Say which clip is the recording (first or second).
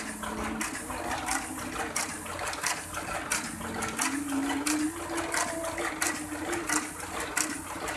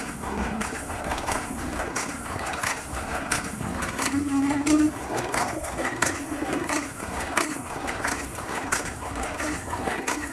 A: first